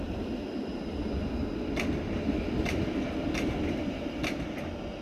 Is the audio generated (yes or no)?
no